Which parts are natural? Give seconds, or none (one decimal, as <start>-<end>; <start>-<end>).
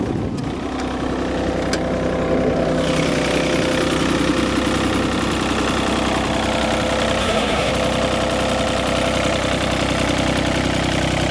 0.0-7.2; 7.7-11.3